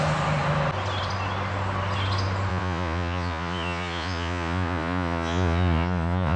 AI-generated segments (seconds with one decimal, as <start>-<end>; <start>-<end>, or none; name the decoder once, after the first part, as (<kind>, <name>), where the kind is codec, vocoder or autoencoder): 2.5-6.4 (vocoder, Vocos)